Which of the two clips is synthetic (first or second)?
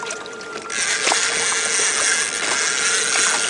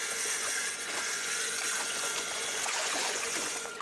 second